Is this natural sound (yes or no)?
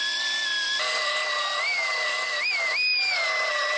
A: no